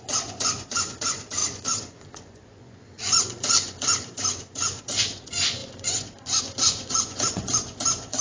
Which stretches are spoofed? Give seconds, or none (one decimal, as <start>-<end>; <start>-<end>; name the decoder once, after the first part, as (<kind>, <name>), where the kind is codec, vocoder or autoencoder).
0.0-8.2 (vocoder, Vocos)